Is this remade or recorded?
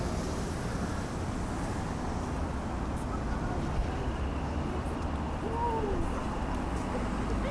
recorded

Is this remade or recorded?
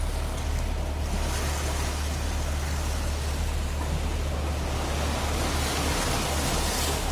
recorded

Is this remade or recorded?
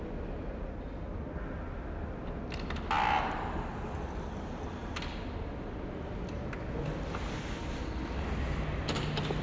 recorded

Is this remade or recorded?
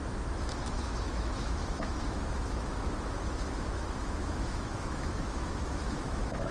remade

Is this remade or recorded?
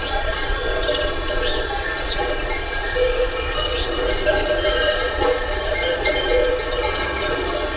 remade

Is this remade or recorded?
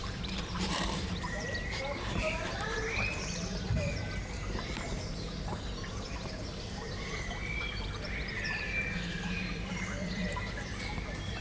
remade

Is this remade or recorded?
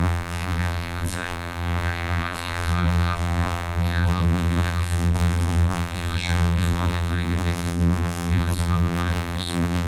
remade